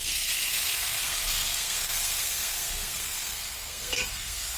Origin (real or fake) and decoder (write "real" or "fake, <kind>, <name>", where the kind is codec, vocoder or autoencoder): fake, codec, SNAC